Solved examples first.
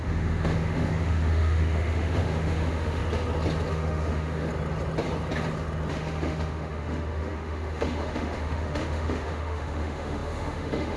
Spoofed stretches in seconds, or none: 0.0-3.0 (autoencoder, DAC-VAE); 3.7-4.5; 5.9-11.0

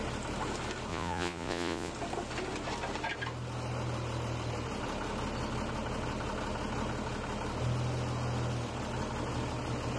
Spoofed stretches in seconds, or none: 0.9-1.9 (vocoder, Vocos)

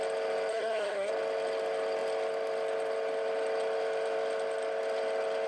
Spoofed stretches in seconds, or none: 0.5-1.1 (codec, SNAC)